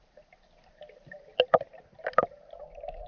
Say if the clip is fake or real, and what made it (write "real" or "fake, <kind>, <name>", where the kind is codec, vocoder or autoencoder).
real